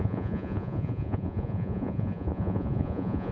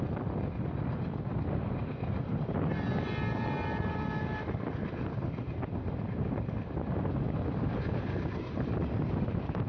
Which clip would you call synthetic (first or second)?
first